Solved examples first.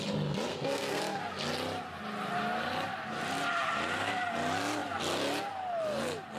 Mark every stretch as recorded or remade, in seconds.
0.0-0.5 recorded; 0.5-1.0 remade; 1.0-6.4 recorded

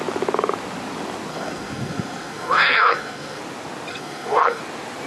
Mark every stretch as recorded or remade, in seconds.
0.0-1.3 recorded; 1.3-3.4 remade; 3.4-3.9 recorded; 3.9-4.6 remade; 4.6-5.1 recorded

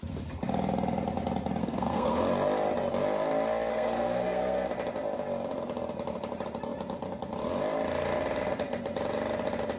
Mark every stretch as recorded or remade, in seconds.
0.0-1.6 recorded; 1.6-2.2 remade; 2.2-3.7 recorded; 3.7-4.7 remade; 4.7-9.8 recorded